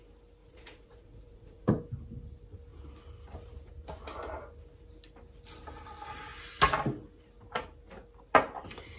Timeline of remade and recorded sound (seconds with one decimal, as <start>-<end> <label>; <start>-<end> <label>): 0.0-0.4 recorded; 0.4-1.7 remade; 1.7-9.0 recorded